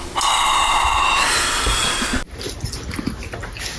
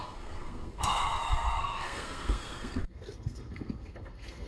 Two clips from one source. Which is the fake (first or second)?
second